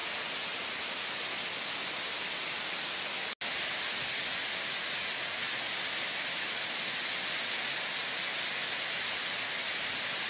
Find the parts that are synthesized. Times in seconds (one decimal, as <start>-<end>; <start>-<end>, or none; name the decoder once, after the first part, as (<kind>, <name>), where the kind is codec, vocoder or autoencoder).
none